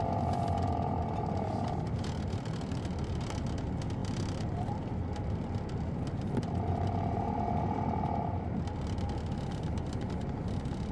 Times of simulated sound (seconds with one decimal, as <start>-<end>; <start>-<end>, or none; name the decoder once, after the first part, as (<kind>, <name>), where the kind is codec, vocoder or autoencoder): none